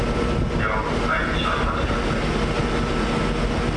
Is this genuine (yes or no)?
yes